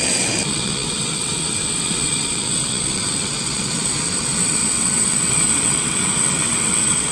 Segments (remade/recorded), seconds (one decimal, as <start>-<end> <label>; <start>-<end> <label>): 0.0-7.1 remade